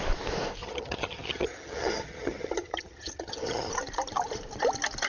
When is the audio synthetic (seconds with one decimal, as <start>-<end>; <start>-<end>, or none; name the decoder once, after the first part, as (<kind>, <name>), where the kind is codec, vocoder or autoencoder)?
0.6-3.7 (vocoder, HiFi-GAN)